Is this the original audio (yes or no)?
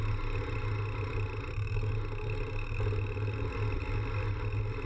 yes